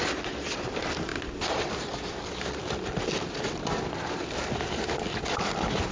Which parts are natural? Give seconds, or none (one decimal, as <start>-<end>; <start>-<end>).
0.0-5.9